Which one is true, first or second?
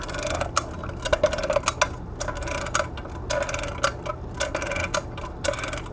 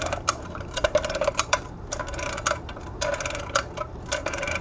first